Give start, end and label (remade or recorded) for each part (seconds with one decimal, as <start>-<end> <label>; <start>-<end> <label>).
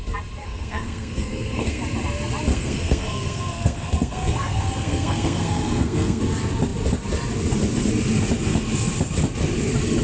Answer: 0.0-0.4 recorded; 0.4-1.8 remade; 1.8-2.5 recorded; 2.5-6.2 remade; 6.2-10.0 recorded